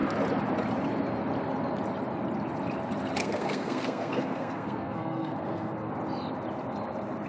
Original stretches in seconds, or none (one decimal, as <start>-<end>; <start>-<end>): 0.0-3.2; 5.9-7.3